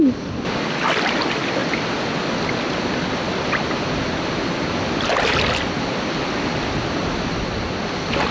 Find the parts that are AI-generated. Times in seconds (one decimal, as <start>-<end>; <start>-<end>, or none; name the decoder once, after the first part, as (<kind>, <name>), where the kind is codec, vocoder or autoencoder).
none